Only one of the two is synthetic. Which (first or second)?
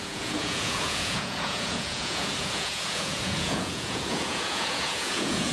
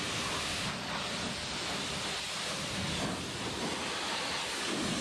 first